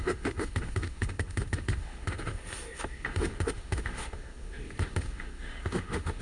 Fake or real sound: fake